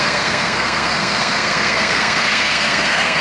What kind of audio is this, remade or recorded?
remade